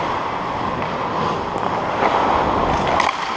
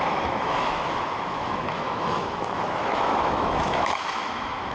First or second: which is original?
first